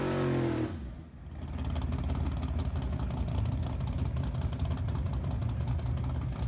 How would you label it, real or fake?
real